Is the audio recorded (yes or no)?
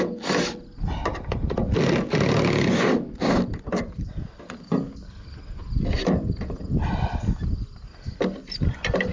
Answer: yes